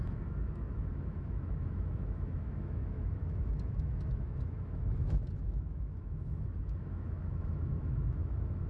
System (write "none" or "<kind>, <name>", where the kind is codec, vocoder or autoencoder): autoencoder, DAC-VAE